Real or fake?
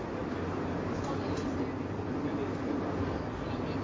real